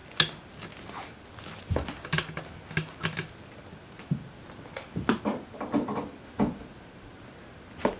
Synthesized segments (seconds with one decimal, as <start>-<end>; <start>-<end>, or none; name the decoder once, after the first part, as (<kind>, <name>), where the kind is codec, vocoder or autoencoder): none